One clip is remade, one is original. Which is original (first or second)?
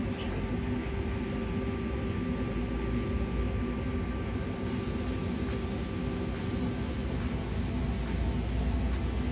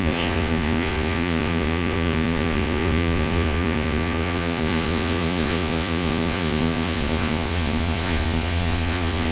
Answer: first